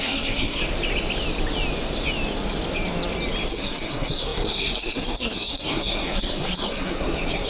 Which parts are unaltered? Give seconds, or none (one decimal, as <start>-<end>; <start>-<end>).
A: 0.6-3.5